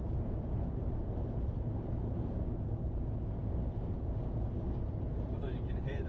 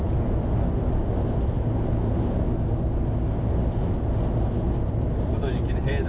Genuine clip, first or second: second